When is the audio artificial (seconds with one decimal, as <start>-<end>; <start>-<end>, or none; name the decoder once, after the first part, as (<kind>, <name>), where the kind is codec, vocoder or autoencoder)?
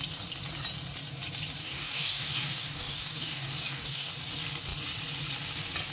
1.6-4.1 (codec, DAC)